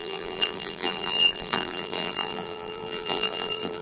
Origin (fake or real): fake